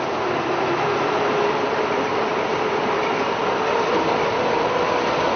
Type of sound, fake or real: real